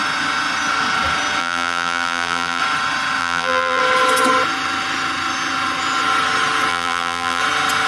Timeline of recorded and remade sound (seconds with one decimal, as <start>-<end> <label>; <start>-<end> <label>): 0.0-1.4 recorded; 1.4-2.6 remade; 2.6-3.2 recorded; 3.2-3.8 remade; 3.8-6.7 recorded; 6.7-7.4 remade; 7.4-7.9 recorded